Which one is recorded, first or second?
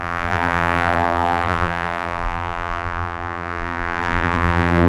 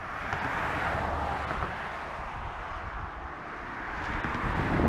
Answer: second